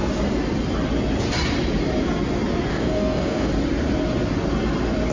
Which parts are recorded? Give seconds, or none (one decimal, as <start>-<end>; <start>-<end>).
0.0-2.7; 3.5-5.1